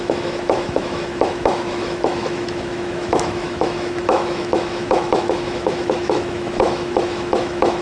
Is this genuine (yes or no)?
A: no